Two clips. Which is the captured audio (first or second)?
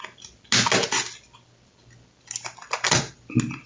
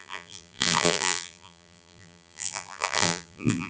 first